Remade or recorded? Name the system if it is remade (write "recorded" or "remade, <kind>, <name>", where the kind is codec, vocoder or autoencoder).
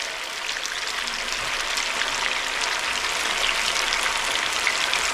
recorded